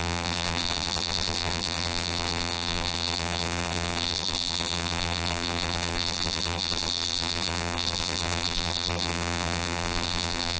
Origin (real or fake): fake